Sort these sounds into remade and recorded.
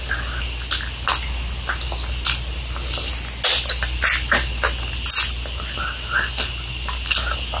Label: recorded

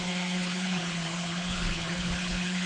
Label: remade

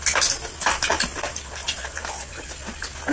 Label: recorded